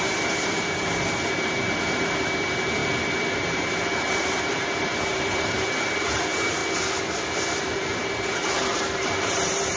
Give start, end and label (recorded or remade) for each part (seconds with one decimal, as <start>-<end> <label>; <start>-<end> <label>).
0.0-2.8 remade; 2.8-3.4 recorded; 3.4-6.6 remade; 6.6-7.6 recorded; 7.6-8.0 remade; 8.0-8.6 recorded; 8.6-9.8 remade